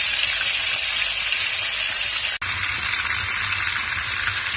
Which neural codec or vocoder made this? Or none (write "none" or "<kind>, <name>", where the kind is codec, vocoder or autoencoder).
none